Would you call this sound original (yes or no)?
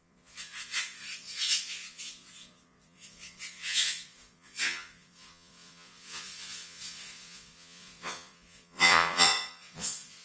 no